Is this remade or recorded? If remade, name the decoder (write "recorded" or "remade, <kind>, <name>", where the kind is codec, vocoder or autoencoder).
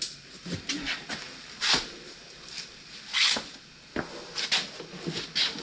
recorded